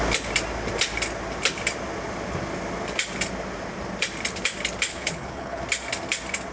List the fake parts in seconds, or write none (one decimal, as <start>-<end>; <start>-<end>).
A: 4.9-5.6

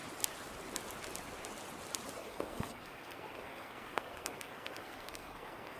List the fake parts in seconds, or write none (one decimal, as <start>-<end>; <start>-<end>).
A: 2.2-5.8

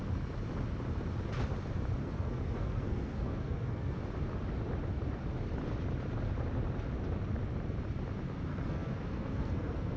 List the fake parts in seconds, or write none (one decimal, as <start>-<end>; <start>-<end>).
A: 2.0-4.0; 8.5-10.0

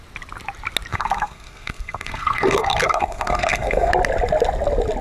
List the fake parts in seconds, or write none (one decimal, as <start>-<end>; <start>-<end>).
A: 0.9-3.9